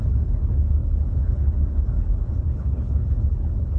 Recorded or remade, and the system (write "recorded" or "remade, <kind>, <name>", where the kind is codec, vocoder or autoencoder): remade, codec, HILCodec